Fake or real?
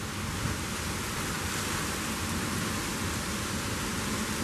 real